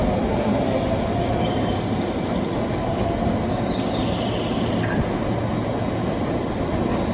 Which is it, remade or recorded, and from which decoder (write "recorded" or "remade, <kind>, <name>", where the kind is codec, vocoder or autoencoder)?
recorded